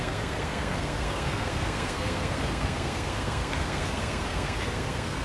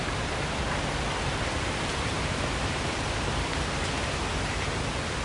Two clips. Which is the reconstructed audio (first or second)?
first